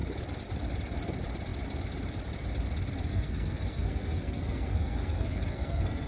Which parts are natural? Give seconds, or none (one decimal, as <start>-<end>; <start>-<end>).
0.0-3.1